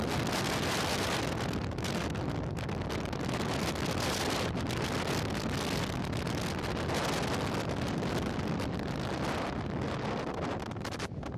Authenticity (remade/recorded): recorded